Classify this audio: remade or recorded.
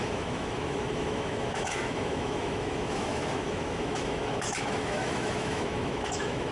remade